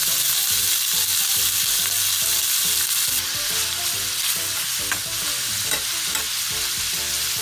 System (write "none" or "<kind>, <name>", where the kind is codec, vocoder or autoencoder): none